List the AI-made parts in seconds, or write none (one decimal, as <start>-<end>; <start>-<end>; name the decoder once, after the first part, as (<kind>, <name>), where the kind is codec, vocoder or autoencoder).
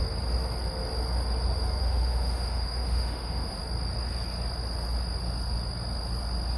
1.8-3.6 (autoencoder, DAC-VAE)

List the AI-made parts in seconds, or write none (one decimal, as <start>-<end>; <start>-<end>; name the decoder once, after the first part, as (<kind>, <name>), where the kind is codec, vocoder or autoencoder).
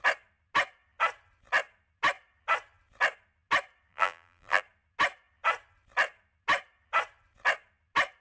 3.9-4.6 (vocoder, BigVGAN v2)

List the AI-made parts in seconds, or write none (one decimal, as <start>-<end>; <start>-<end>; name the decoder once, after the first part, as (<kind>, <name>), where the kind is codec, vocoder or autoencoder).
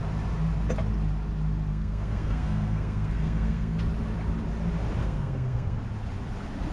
1.7-3.8 (codec, SNAC); 5.0-5.8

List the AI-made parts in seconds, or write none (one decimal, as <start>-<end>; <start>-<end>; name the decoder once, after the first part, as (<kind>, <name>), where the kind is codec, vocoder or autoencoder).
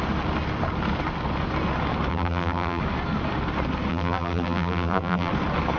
2.1-2.8 (vocoder, BigVGAN v2); 3.9-5.3